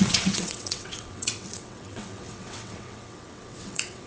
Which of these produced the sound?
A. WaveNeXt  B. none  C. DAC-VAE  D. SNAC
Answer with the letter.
A